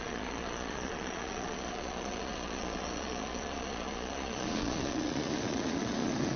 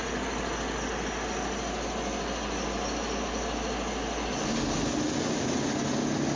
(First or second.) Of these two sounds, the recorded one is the second